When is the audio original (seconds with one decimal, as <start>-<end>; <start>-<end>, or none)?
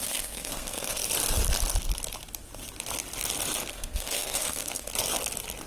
1.0-3.7; 4.9-5.7